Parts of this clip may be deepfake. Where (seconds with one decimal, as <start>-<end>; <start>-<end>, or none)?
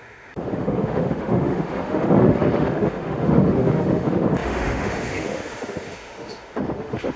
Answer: 0.0-7.2